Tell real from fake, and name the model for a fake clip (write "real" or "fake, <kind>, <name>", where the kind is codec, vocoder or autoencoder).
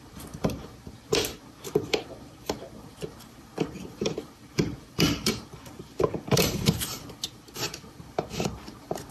fake, vocoder, BigVGAN v2